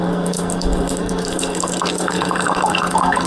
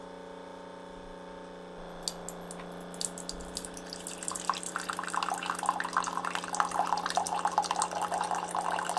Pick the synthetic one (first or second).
first